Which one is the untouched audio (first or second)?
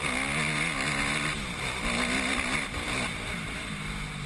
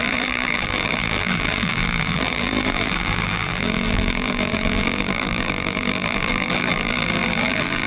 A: first